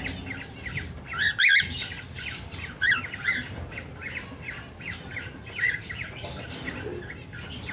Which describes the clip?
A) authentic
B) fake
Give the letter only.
A